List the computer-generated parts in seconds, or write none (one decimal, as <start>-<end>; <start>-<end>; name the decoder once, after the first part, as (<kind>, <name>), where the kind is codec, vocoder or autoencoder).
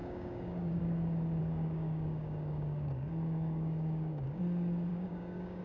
0.0-0.8 (codec, DAC); 1.4-4.4; 4.9-5.6